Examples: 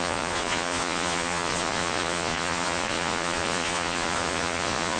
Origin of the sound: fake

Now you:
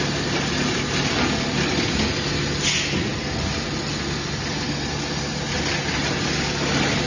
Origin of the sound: real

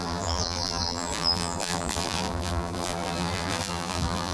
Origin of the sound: fake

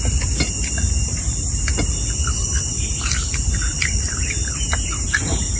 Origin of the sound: real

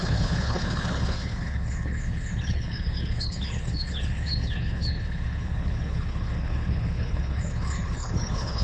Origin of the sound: fake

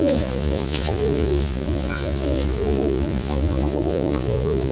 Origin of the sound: fake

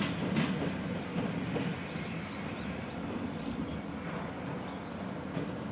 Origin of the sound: real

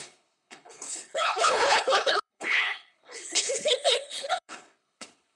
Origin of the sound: fake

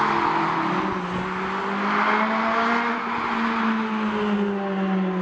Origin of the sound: real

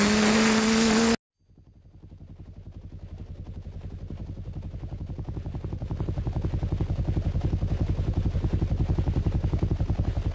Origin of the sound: real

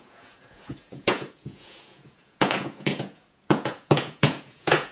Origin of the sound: fake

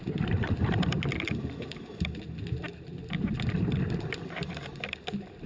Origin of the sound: real